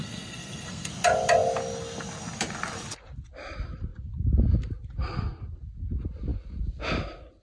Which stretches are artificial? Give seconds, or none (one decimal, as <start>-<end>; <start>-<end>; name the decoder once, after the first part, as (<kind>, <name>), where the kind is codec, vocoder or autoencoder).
0.0-0.9 (codec, SNAC)